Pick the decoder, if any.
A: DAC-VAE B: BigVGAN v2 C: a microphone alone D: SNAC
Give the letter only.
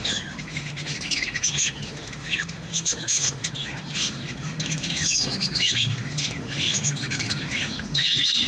A